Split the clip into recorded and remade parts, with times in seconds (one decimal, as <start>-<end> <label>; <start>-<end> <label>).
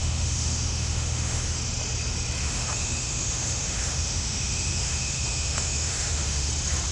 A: 0.0-1.6 remade; 1.6-2.4 recorded; 2.4-6.5 remade; 6.5-6.9 recorded